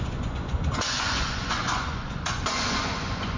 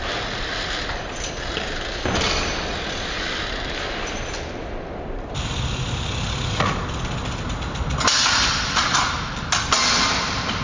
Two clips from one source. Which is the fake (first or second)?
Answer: first